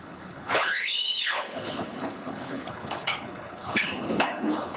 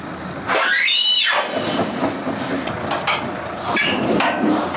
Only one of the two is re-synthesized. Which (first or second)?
first